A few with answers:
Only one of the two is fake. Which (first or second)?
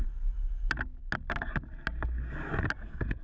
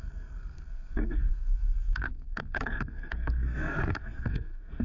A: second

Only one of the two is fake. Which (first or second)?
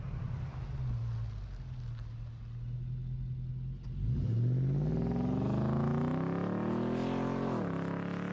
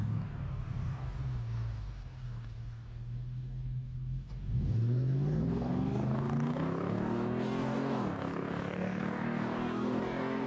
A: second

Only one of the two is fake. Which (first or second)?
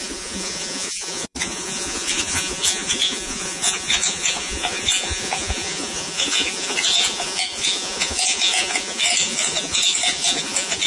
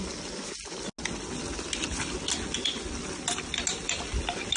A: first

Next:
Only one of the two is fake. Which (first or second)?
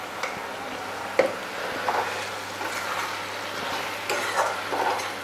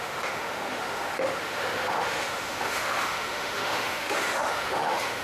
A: second